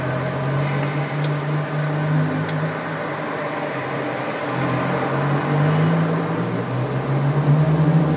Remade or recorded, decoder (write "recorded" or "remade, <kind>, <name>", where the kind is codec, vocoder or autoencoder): recorded